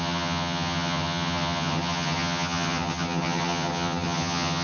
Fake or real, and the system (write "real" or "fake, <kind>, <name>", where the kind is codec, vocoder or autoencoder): fake, vocoder, HiFi-GAN